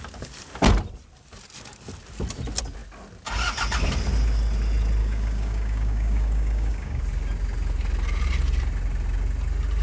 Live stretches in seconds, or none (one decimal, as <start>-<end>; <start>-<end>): 0.0-5.0; 7.0-9.8

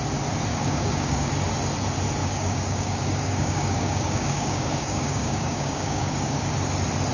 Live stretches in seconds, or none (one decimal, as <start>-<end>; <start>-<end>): 0.0-0.5; 1.3-2.2; 6.5-7.1

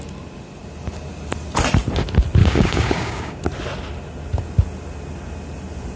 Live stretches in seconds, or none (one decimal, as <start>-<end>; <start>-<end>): 0.0-2.4; 3.4-6.0